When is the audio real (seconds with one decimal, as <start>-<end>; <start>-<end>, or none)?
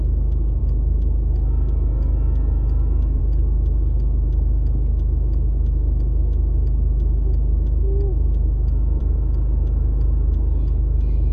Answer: 0.0-8.1; 9.0-11.3